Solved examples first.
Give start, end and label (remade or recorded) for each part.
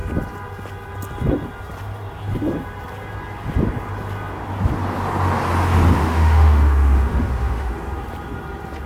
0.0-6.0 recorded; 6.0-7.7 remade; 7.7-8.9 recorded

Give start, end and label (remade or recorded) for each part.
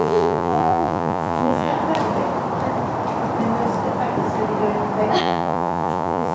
0.0-1.7 remade; 1.7-5.2 recorded; 5.2-6.3 remade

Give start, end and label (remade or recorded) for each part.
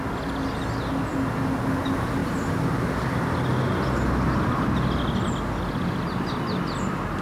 0.0-7.2 recorded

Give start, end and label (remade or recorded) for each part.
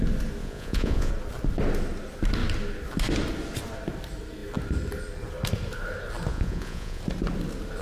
0.0-0.4 recorded; 0.4-1.1 remade; 1.1-6.3 recorded; 6.3-7.0 remade; 7.0-7.8 recorded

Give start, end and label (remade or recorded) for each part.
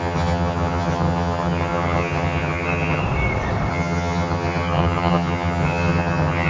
0.0-3.0 remade; 3.0-3.7 recorded; 3.7-6.5 remade